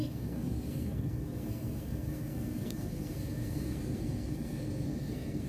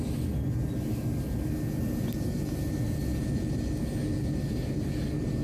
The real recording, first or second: second